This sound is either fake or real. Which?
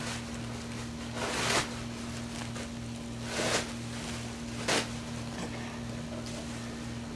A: real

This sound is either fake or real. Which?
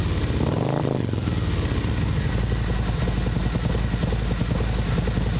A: real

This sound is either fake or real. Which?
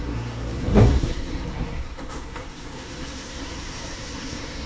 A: fake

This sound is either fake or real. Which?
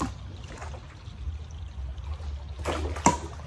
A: real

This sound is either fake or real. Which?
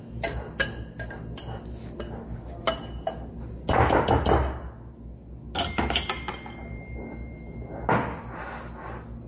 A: real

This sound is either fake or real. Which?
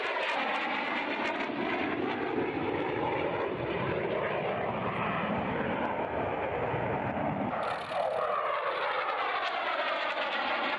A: real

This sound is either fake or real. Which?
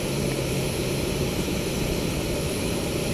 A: fake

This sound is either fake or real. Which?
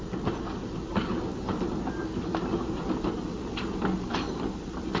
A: real